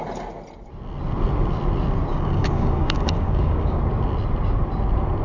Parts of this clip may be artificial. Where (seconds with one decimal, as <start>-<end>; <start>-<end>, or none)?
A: 2.1-3.8